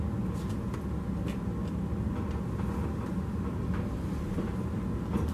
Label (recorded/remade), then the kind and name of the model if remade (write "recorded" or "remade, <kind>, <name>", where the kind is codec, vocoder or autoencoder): recorded